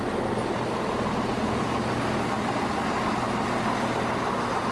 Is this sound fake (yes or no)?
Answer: no